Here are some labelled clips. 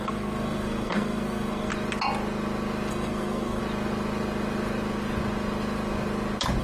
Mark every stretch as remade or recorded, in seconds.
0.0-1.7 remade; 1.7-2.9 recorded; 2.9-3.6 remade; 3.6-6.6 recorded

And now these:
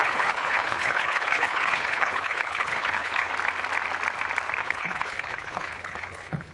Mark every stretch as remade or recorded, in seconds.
0.0-3.3 remade; 3.3-4.6 recorded; 4.6-6.5 remade

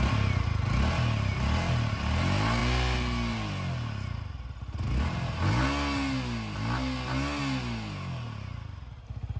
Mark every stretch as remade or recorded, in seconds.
0.0-9.4 recorded

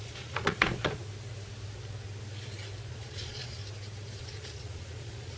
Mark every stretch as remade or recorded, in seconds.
0.0-1.0 remade; 1.0-2.9 recorded; 2.9-3.6 remade; 3.6-4.2 recorded; 4.2-5.4 remade